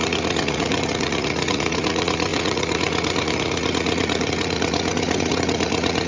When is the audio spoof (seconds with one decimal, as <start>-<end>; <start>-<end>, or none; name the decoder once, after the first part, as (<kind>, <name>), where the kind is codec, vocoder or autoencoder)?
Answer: 0.0-6.1 (vocoder, Vocos)